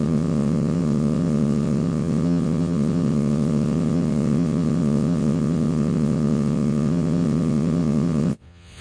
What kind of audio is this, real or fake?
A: fake